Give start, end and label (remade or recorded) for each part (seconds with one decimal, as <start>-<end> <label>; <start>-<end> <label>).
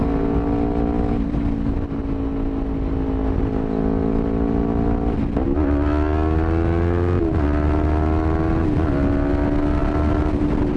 0.0-10.8 recorded